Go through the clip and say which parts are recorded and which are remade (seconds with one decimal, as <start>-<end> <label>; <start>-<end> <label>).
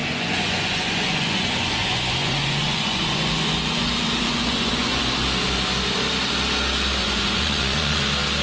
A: 0.0-5.0 remade; 5.0-7.0 recorded; 7.0-8.0 remade; 8.0-8.4 recorded